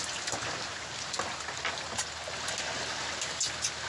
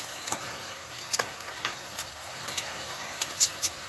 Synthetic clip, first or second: second